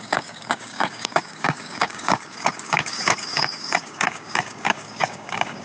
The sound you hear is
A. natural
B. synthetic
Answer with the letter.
B